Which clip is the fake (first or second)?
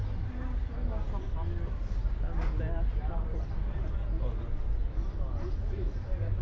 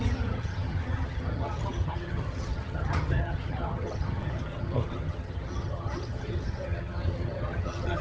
second